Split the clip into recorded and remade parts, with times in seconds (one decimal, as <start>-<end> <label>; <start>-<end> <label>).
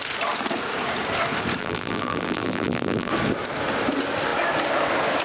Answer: 0.0-1.6 recorded; 1.6-3.1 remade; 3.1-5.2 recorded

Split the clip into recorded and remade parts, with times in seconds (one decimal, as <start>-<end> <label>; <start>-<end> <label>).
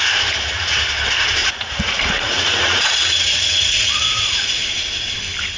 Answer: 0.0-1.4 recorded; 1.4-4.6 remade; 4.6-5.6 recorded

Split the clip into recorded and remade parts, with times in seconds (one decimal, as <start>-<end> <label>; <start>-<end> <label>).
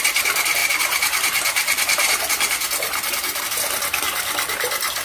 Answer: 0.0-0.6 recorded; 0.6-3.4 remade; 3.4-5.0 recorded